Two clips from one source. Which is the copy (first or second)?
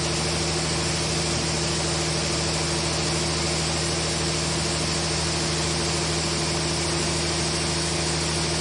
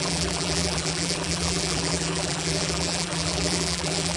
second